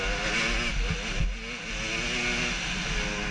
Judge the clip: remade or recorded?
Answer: recorded